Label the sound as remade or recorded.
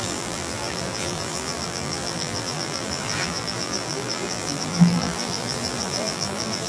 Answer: remade